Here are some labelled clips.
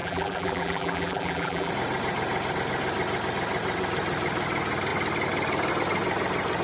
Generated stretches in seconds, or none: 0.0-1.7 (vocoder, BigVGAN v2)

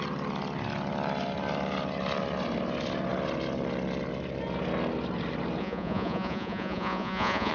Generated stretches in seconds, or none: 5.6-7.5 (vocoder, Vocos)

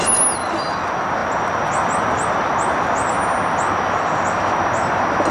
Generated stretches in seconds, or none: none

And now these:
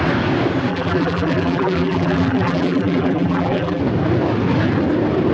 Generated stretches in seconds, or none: 0.7-3.8 (vocoder, BigVGAN v2)